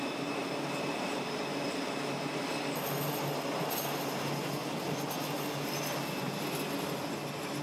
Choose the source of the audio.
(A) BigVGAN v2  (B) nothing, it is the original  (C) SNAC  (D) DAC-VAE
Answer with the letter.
B